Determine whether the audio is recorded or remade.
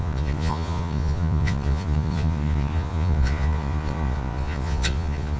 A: remade